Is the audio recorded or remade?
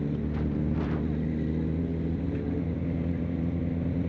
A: recorded